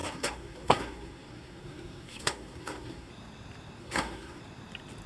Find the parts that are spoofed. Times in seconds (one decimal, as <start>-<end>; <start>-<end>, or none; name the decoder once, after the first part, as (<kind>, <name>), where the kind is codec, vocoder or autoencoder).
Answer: 0.0-3.1 (codec, SNAC); 3.8-4.4